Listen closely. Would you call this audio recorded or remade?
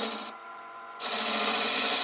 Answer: remade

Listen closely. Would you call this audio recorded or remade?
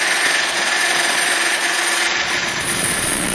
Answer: remade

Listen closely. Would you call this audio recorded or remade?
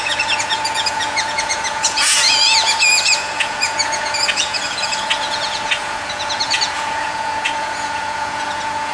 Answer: remade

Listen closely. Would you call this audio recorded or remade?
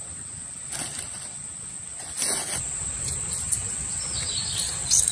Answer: recorded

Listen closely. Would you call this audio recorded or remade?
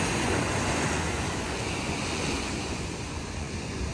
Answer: remade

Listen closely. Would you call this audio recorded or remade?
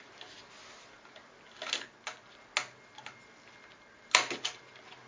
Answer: recorded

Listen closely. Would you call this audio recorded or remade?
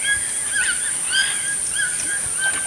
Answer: recorded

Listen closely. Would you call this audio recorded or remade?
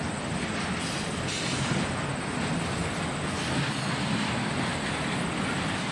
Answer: recorded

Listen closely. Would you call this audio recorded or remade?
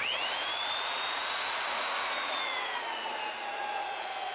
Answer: remade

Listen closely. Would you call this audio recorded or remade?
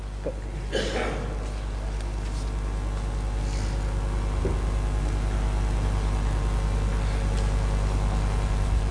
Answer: recorded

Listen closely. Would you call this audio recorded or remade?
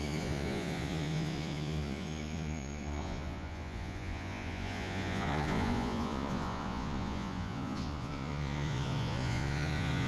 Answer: remade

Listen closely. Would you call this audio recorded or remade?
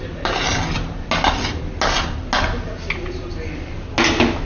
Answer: recorded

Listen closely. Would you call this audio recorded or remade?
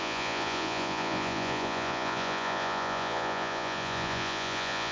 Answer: remade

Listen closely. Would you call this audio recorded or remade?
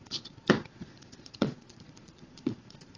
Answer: remade